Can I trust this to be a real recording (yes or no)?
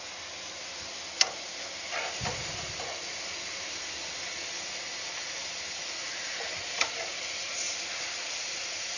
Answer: no